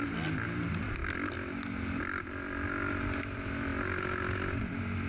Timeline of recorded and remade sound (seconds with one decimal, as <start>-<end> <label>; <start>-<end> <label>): 0.0-5.1 recorded